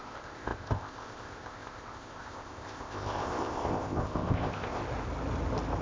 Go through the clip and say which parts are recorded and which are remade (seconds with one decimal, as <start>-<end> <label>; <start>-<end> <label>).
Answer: 0.0-4.8 remade; 4.8-5.8 recorded

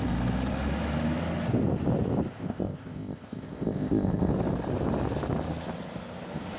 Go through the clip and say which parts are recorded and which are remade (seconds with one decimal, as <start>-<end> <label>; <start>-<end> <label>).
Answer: 0.0-2.3 recorded; 2.3-4.3 remade; 4.3-6.6 recorded